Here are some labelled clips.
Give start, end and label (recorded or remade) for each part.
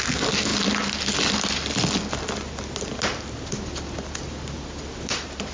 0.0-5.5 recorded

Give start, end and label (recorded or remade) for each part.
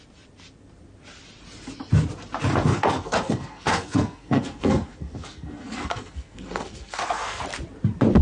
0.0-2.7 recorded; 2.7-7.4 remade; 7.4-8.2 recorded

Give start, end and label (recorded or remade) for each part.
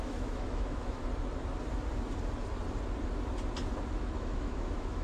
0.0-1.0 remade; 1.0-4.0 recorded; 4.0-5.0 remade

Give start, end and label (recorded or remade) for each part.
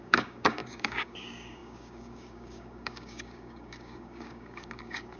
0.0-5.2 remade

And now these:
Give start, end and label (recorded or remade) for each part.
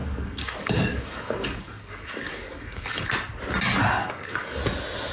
0.0-3.1 remade; 3.1-4.0 recorded; 4.0-4.6 remade; 4.6-5.1 recorded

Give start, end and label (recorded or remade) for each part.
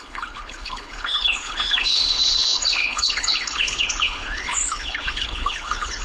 0.0-6.0 remade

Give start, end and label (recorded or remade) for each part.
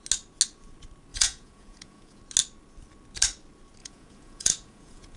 0.0-1.1 recorded; 1.1-2.2 remade; 2.2-3.8 recorded; 3.8-5.2 remade